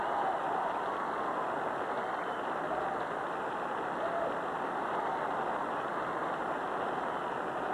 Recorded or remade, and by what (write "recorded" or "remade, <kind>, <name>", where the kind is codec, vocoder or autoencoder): recorded